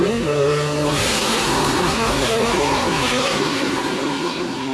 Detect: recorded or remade remade